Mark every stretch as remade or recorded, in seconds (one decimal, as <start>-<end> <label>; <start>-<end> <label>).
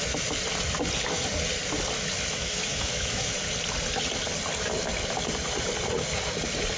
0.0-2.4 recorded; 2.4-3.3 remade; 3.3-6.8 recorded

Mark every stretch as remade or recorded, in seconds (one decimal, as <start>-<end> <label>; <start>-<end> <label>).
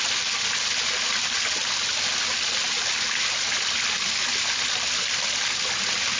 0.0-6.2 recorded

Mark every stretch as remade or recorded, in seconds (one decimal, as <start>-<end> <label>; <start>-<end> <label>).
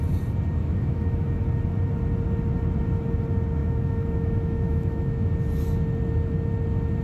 0.0-0.6 recorded; 0.6-1.4 remade; 1.4-3.6 recorded; 3.6-5.3 remade; 5.3-7.0 recorded